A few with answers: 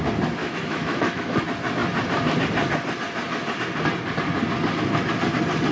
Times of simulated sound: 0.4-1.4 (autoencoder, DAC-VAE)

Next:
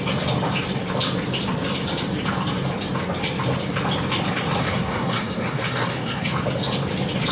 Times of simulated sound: 4.6-6.3 (codec, SNAC)

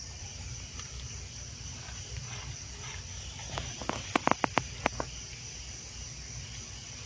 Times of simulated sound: none

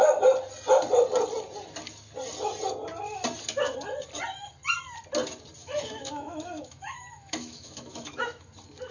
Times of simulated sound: 5.6-8.5 (autoencoder, DAC-VAE)

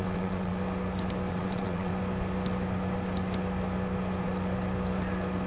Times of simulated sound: 0.0-0.5 (vocoder, WaveNeXt); 1.3-1.9

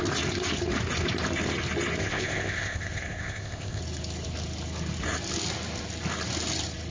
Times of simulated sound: 2.0-3.8 (codec, ZipCodec)

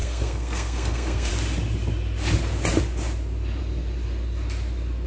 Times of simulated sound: 0.0-1.3 (codec, SNAC)

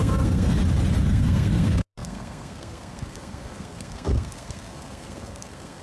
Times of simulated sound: 0.0-0.6 (codec, SNAC); 1.1-5.8